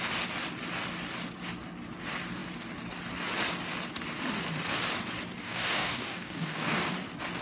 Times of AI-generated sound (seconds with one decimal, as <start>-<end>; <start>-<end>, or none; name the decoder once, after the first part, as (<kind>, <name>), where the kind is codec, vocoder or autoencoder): 5.4-6.9 (codec, DAC)